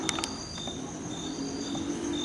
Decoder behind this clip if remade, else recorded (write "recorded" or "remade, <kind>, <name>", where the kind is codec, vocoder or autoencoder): recorded